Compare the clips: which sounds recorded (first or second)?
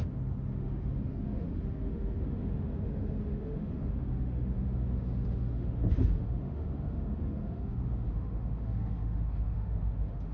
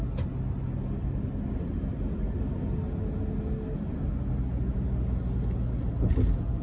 second